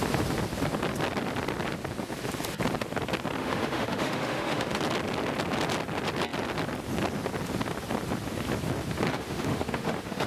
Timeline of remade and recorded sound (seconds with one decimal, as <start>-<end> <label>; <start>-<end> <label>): 0.0-3.4 recorded; 3.4-4.8 remade; 4.8-9.1 recorded; 9.1-10.3 remade